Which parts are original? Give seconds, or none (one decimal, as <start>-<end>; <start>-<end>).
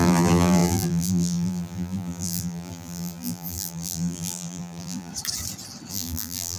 5.1-5.9